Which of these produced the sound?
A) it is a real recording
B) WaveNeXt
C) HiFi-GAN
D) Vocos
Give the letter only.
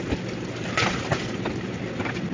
A